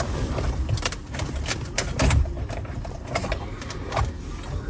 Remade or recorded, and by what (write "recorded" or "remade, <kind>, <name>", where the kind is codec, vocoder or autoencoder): recorded